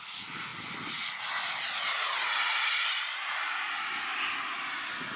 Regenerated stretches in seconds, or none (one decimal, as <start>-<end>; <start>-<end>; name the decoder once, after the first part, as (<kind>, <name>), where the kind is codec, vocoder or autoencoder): none

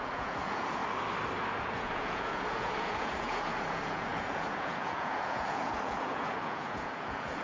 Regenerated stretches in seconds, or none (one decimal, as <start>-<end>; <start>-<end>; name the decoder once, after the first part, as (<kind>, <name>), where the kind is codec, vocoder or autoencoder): 0.0-0.8 (vocoder, Vocos); 1.6-7.4